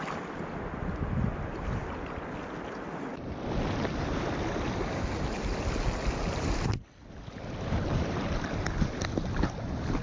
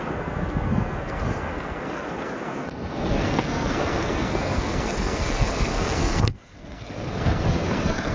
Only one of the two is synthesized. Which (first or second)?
second